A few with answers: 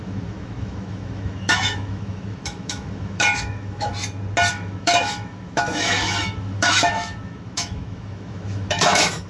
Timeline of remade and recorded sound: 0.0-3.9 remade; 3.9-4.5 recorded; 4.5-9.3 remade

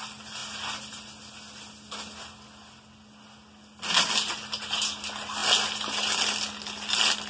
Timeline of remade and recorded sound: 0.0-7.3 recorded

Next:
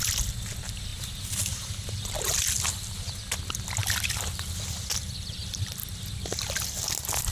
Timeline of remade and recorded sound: 0.0-7.3 recorded